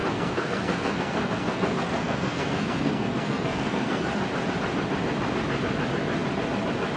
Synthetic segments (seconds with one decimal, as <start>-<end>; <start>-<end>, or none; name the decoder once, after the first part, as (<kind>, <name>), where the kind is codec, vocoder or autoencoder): 0.0-4.2 (codec, SNAC)